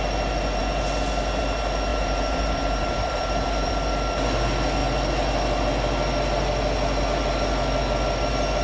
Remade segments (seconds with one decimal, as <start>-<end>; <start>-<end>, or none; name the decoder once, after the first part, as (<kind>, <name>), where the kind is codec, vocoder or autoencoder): 1.9-3.7 (vocoder, BigVGAN v2)